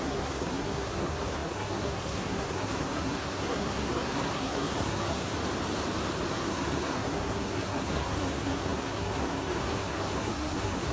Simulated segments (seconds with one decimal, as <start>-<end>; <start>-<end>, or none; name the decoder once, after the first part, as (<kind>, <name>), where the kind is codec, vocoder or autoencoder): 0.0-5.3 (codec, SNAC); 6.3-10.9